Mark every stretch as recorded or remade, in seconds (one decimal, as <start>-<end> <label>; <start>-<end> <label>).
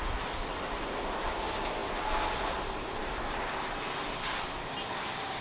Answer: 0.0-5.4 recorded